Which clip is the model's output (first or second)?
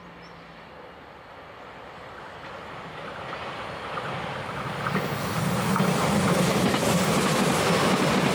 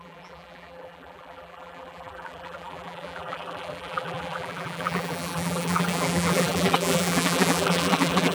second